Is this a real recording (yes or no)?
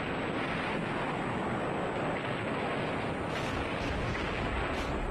yes